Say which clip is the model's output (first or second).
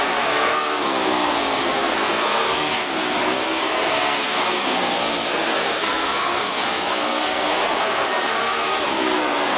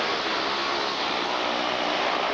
first